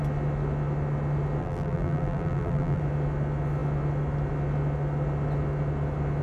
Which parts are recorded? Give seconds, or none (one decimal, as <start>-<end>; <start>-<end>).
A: 0.0-1.4; 2.8-6.2